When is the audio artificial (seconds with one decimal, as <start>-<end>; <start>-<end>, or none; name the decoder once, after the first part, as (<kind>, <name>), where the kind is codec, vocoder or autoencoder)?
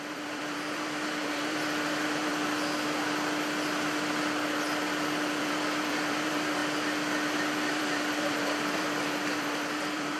0.0-2.3 (vocoder, BigVGAN v2); 5.4-6.6; 7.7-10.2